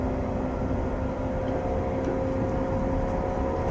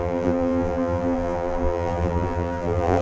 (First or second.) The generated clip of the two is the second